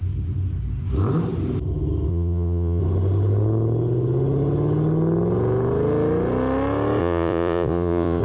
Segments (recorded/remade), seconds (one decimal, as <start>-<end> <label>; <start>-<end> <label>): 0.0-2.1 recorded; 2.1-2.8 remade; 2.8-7.0 recorded; 7.0-8.2 remade